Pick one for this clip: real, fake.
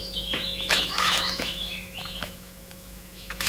fake